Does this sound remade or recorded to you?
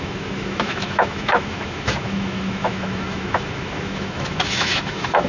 remade